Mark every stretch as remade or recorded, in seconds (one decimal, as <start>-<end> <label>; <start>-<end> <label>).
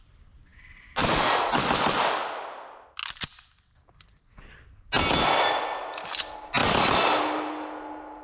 0.0-8.2 recorded